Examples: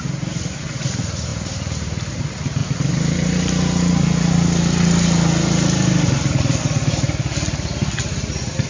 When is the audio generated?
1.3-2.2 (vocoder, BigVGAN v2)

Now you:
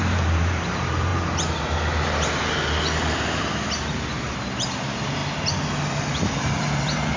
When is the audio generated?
0.0-1.1 (vocoder, BigVGAN v2); 4.4-5.2; 6.4-7.2

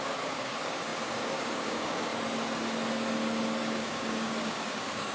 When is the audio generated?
0.0-2.1 (codec, DAC); 3.6-5.1

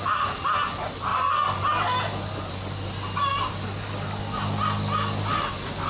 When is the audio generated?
none

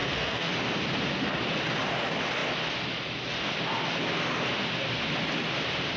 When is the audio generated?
0.0-0.5 (codec, SNAC)